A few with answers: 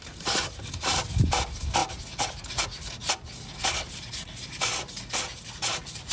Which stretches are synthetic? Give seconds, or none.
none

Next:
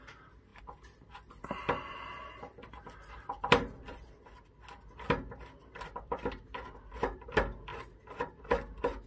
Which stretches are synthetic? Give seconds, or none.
none

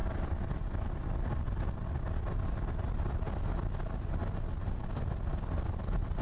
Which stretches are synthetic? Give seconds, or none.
4.2-4.9 (vocoder, BigVGAN v2)

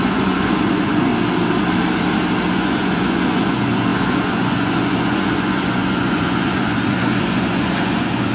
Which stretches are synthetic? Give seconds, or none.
0.0-1.1 (vocoder, Vocos); 2.5-8.3

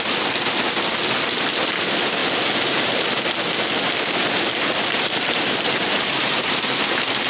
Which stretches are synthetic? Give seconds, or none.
2.2-3.0 (vocoder, BigVGAN v2); 4.2-6.5

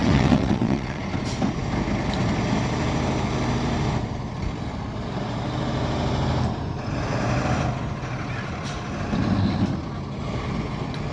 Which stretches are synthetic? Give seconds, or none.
0.0-1.0 (vocoder, WaveNeXt)